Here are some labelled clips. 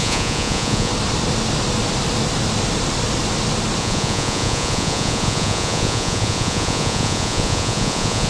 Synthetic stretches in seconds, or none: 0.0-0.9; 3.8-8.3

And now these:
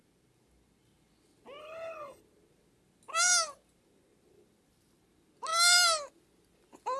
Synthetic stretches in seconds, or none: 1.6-2.2

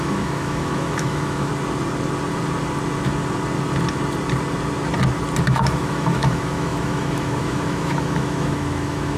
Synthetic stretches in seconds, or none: 0.0-1.5; 5.4-9.2

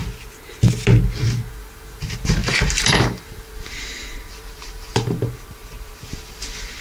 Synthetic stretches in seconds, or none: 1.5-6.8